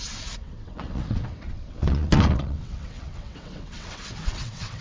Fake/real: fake